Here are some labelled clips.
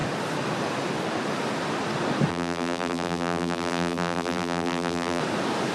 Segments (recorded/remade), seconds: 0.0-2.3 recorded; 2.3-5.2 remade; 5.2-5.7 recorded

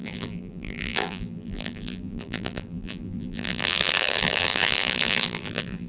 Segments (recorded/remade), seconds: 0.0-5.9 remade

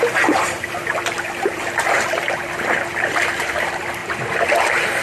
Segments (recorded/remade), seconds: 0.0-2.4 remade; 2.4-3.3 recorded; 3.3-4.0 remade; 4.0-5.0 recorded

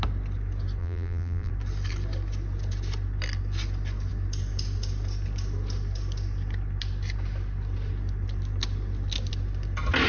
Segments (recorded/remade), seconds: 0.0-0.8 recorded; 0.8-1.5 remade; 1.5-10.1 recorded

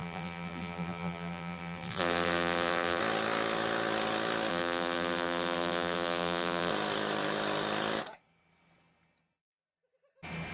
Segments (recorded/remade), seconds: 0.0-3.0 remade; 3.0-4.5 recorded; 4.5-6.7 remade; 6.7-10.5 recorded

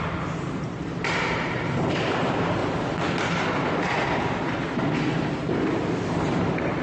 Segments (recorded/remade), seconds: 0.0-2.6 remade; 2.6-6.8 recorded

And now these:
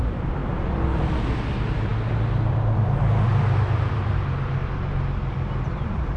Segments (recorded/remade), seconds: 0.0-0.4 remade; 0.4-1.2 recorded; 1.2-4.6 remade; 4.6-5.6 recorded; 5.6-6.2 remade

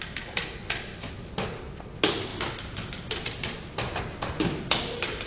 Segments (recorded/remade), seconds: 0.0-5.3 recorded